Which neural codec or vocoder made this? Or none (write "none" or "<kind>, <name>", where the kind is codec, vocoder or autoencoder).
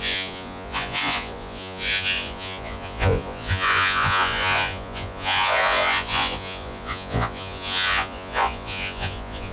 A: vocoder, Vocos